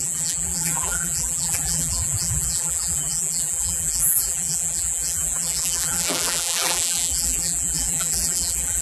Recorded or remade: remade